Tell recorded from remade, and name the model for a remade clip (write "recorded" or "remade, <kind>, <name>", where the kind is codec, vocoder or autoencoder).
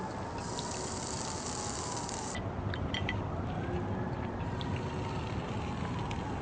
recorded